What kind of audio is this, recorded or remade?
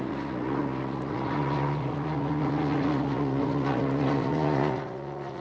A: remade